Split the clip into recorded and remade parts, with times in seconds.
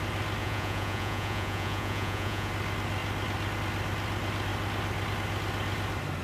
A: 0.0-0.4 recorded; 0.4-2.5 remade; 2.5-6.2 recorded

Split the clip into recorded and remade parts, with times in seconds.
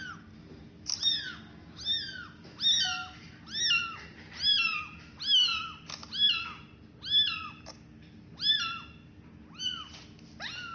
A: 0.0-10.7 recorded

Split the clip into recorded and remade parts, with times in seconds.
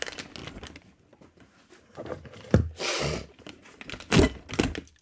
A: 0.0-5.0 recorded